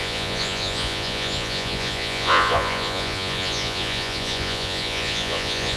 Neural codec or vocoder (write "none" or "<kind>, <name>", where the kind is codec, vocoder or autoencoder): vocoder, Vocos